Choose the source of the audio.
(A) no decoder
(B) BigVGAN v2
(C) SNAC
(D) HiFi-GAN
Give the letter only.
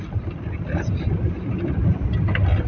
A